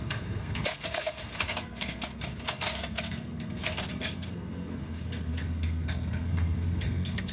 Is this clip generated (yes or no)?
yes